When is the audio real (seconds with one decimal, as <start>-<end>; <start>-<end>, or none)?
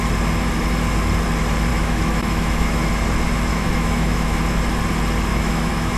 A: 0.0-1.7; 2.9-3.5; 4.6-5.3